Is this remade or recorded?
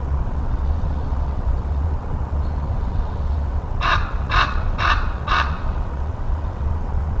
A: remade